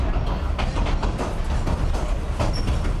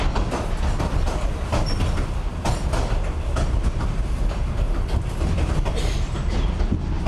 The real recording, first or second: first